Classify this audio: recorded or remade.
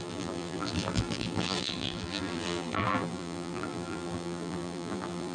remade